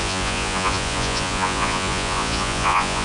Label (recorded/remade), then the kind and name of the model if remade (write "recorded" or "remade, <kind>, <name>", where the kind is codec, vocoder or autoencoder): remade, vocoder, Vocos